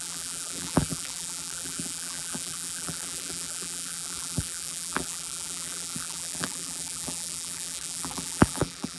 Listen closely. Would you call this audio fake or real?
fake